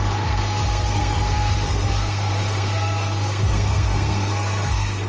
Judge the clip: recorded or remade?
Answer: remade